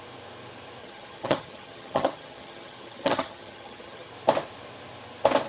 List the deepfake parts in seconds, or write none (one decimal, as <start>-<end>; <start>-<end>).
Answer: 0.8-4.1